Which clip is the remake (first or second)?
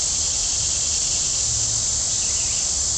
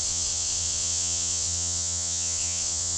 second